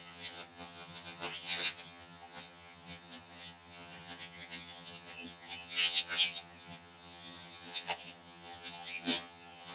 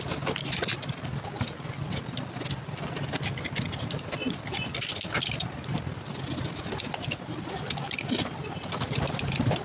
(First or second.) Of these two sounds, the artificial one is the first